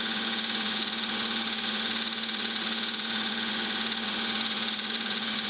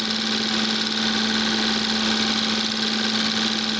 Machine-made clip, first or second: first